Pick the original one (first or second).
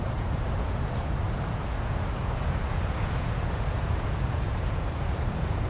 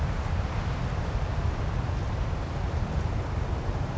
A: second